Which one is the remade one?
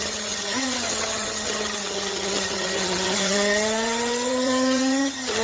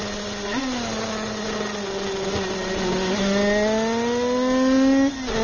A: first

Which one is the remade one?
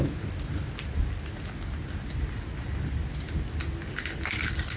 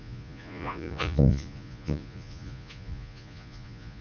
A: second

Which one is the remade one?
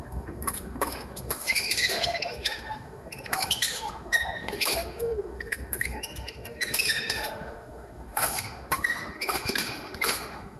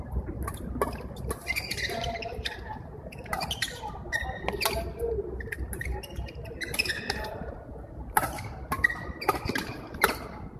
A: first